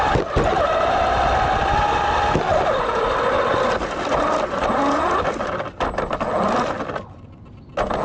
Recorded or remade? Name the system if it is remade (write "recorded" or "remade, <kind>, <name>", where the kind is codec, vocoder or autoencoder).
recorded